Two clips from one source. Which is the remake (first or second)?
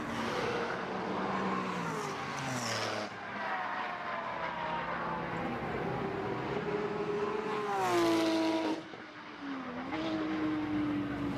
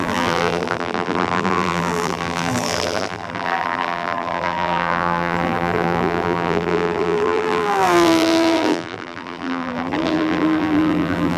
second